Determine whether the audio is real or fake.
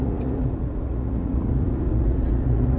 fake